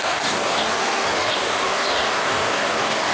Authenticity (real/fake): fake